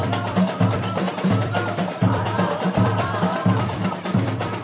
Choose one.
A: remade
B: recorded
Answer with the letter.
A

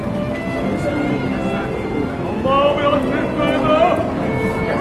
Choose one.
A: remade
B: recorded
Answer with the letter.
B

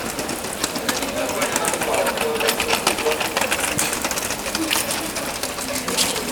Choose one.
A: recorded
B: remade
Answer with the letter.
A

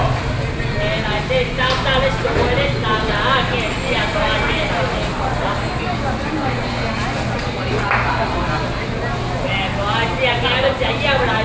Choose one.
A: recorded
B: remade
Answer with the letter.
A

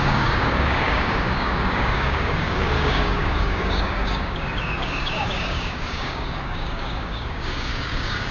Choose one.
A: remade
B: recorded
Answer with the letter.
A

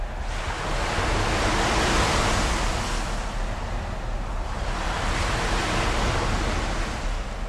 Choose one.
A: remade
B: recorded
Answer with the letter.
B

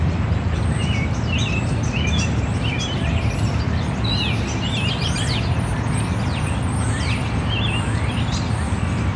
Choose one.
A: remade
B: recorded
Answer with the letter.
B